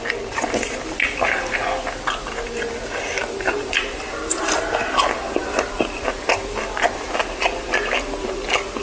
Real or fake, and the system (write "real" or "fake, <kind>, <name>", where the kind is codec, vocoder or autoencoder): real